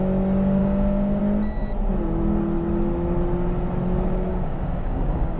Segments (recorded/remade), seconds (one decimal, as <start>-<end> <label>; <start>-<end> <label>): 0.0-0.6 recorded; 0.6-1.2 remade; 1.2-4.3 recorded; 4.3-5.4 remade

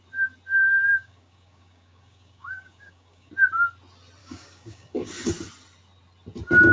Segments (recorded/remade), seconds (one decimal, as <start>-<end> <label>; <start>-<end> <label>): 0.0-0.9 recorded; 0.9-3.3 remade; 3.3-4.2 recorded; 4.2-5.1 remade; 5.1-6.7 recorded

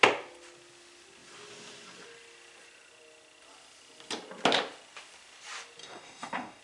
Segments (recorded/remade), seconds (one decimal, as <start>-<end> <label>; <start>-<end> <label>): 0.0-5.8 recorded; 5.8-6.6 remade

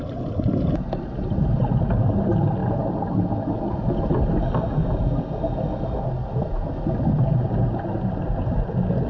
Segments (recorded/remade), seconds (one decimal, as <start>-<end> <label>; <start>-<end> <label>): 0.0-9.1 recorded

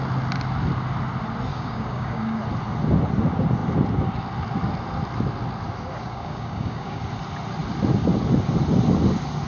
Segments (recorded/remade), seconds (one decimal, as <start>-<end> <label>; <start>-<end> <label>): 0.0-1.5 recorded; 1.5-2.4 remade; 2.4-6.0 recorded; 6.0-7.0 remade; 7.0-9.5 recorded